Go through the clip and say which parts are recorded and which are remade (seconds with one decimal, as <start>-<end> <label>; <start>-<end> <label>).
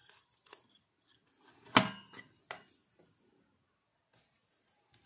0.0-5.1 recorded